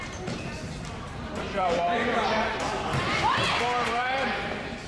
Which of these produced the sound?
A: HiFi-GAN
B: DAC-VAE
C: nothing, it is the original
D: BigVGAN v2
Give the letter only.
D